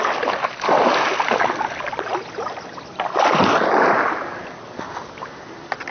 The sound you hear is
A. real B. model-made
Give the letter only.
A